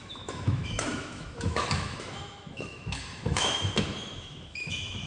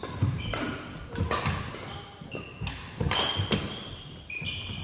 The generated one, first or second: first